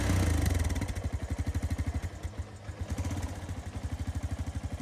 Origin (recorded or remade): recorded